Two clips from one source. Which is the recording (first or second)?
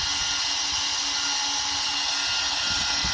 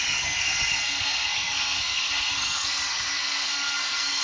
first